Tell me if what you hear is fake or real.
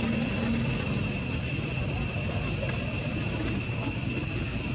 real